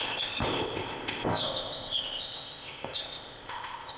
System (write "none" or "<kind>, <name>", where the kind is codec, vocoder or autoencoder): codec, ZipCodec